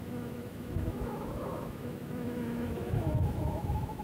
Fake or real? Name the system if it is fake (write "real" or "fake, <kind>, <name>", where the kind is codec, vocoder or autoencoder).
fake, autoencoder, DAC-VAE